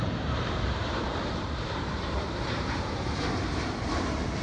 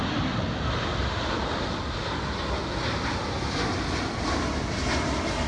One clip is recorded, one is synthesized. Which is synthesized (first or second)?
first